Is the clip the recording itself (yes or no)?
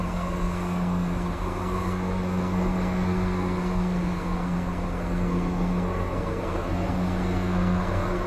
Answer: no